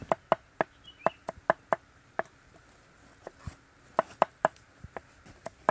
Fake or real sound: real